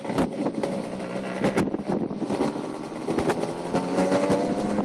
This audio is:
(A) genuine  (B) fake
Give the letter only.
A